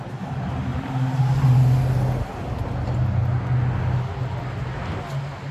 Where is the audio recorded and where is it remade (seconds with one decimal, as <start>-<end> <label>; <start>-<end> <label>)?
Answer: 0.0-0.7 recorded; 0.7-1.6 remade; 1.6-5.5 recorded